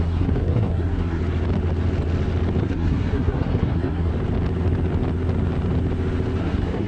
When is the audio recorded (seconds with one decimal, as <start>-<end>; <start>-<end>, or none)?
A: 1.2-2.6; 4.1-6.4

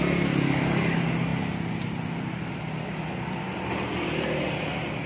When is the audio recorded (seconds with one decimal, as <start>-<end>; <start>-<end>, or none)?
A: 0.0-5.1

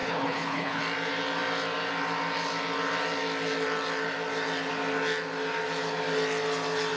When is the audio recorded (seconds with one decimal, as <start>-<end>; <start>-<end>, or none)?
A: 0.8-7.0

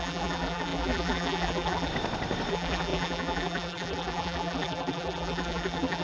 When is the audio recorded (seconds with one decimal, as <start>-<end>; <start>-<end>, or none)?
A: 1.9-2.5